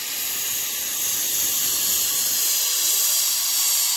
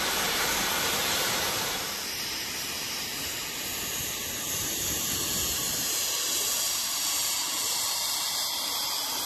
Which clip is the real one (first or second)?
first